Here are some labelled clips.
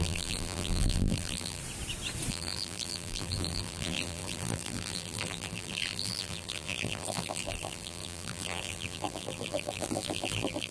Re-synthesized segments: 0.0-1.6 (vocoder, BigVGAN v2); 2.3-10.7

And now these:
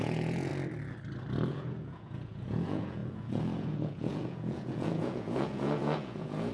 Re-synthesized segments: 0.0-0.5 (vocoder, Vocos); 1.5-6.5

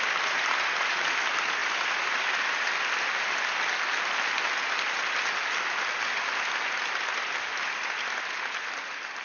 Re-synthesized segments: none